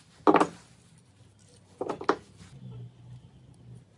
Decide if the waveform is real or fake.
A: real